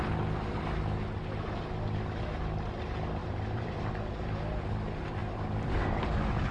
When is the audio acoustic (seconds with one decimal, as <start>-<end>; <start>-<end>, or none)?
0.0-3.2; 3.9-6.5